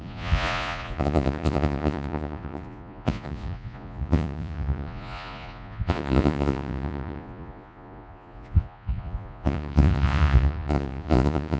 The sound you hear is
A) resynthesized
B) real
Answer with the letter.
A